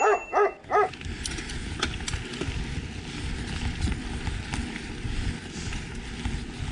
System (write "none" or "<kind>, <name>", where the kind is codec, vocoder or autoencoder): none